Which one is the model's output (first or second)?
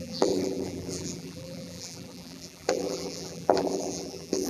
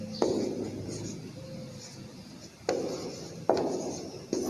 first